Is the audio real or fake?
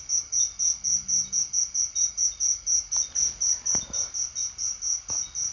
real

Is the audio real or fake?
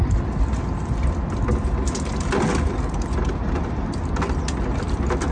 real